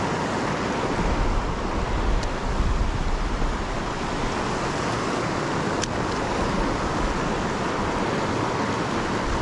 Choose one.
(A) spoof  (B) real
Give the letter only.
B